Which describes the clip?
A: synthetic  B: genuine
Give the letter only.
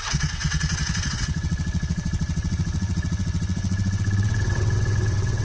A